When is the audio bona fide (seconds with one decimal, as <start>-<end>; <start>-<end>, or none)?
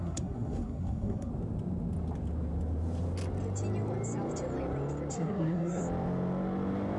1.3-5.1; 5.8-7.0